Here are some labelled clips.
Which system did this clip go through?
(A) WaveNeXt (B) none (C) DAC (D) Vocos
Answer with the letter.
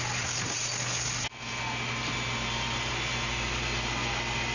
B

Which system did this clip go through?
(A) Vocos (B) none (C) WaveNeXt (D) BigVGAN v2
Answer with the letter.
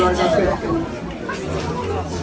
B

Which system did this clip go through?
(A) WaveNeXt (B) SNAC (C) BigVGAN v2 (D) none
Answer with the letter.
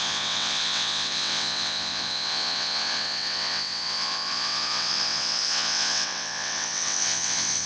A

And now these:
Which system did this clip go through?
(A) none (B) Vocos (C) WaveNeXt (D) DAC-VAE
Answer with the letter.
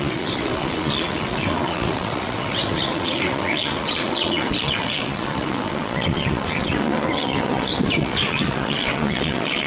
C